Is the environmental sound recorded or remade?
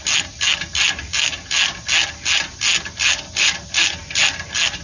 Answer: recorded